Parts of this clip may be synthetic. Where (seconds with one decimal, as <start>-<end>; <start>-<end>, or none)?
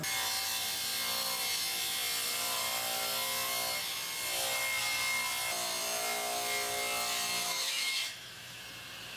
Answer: 7.4-8.6